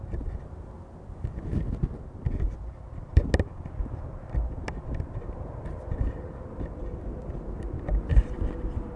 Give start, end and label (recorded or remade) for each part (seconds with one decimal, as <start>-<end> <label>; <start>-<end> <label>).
0.0-9.0 recorded